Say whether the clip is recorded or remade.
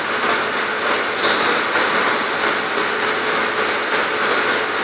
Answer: recorded